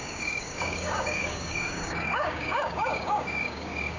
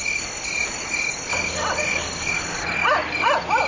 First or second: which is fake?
first